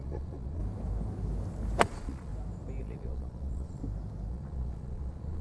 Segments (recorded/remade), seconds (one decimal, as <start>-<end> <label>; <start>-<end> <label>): 0.0-0.6 remade; 0.6-1.8 recorded; 1.8-2.3 remade; 2.3-2.8 recorded; 2.8-3.8 remade; 3.8-4.3 recorded; 4.3-5.4 remade